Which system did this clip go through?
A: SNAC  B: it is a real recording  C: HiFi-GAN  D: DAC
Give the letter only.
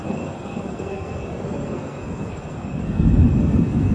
A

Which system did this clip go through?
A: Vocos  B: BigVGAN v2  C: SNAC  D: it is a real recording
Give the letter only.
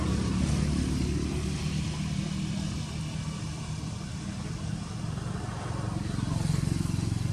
D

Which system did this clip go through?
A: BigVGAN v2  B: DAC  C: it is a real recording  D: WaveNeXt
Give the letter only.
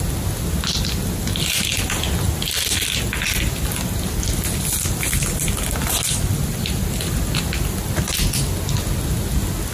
C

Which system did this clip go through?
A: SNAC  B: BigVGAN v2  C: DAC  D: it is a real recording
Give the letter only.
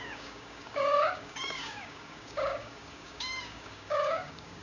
C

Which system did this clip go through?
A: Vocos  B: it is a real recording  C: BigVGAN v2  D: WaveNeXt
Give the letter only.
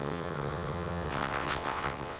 D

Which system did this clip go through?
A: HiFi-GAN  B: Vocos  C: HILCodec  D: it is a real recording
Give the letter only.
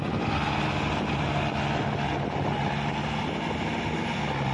D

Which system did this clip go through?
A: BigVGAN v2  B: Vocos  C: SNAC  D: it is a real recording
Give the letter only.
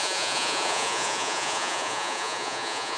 B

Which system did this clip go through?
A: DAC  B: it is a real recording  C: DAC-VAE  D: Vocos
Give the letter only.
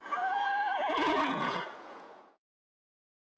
D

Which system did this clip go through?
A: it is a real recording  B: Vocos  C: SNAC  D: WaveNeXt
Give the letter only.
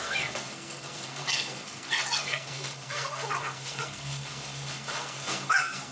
C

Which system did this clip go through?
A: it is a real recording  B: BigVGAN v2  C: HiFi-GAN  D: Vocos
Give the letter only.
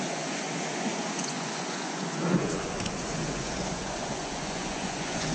D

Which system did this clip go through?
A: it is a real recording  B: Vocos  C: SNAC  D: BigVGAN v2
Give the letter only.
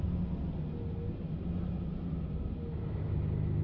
A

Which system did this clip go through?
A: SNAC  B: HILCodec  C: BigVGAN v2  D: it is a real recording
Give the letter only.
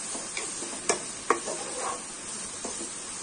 D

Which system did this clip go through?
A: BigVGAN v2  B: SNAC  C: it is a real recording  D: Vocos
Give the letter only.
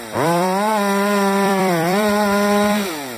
A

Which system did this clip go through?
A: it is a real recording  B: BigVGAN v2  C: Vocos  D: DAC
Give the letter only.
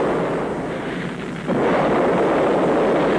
A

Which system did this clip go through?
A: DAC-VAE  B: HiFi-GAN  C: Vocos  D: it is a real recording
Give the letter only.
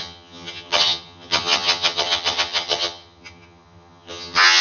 B